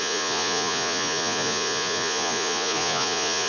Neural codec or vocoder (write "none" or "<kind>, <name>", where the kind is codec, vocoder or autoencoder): vocoder, Vocos